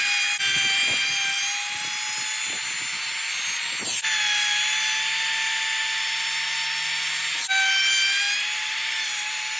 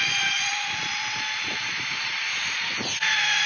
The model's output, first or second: second